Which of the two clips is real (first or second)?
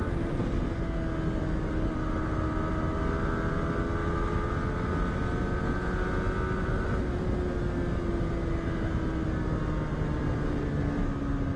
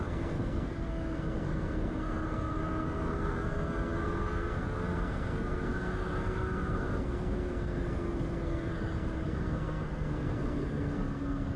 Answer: first